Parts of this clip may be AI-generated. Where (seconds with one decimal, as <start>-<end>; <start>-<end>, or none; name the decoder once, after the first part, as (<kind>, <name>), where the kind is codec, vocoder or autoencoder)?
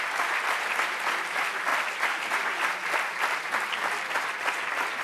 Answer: none